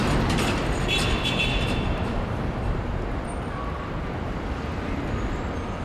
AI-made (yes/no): yes